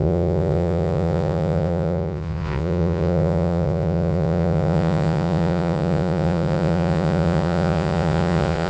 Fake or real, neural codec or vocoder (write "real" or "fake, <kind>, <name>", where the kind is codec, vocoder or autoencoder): fake, vocoder, Vocos